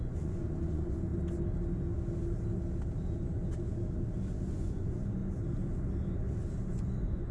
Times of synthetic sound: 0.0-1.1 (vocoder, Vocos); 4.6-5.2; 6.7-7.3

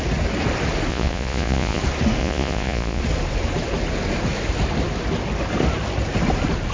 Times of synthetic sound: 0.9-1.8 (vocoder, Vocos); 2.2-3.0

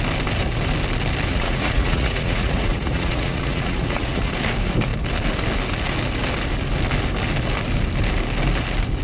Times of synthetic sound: 1.3-4.3 (vocoder, Vocos)

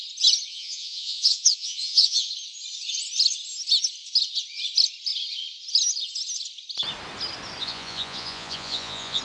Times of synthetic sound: 0.5-2.3 (vocoder, Vocos); 7.6-9.2